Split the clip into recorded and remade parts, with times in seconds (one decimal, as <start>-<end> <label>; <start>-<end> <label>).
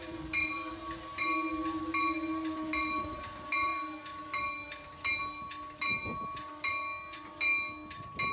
0.0-8.3 recorded